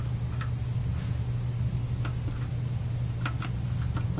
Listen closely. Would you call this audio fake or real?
real